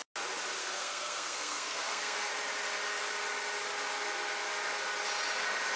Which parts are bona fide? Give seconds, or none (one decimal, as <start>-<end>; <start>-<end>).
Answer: 0.0-0.6; 2.3-5.8

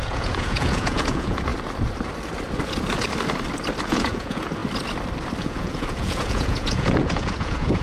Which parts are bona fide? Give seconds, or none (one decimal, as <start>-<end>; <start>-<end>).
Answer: 1.5-3.8; 4.6-5.4

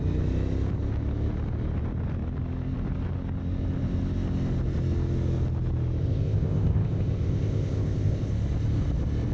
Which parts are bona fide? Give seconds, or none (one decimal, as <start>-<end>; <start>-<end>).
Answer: 0.0-6.0; 8.3-9.3

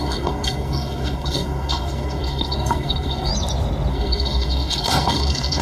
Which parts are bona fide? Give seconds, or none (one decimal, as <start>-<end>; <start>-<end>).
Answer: 3.3-3.9

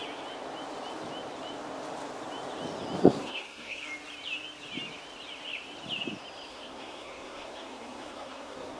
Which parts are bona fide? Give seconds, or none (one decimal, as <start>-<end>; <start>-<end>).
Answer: 0.0-3.0; 3.8-6.5

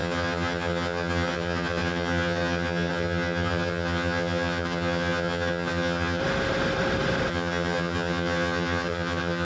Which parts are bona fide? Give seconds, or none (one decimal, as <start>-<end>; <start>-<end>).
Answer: 6.2-7.3

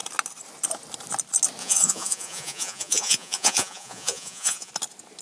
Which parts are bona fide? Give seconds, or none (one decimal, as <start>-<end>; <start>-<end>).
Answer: 0.0-1.6; 4.7-5.2

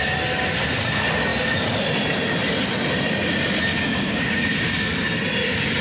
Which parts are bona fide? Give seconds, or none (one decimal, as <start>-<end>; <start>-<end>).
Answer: 0.0-3.7; 4.9-5.8